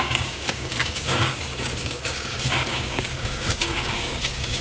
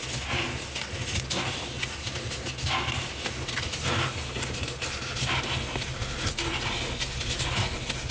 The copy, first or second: first